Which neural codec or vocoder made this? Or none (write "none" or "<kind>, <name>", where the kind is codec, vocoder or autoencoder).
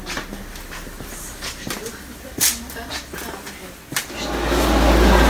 none